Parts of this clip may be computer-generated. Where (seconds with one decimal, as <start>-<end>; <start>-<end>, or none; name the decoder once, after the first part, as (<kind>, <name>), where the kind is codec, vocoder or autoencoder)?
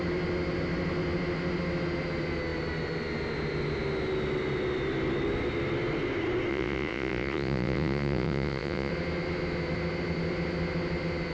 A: 6.5-8.9 (vocoder, Vocos)